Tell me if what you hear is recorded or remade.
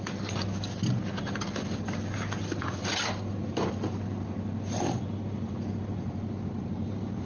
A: recorded